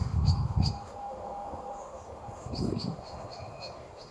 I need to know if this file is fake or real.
fake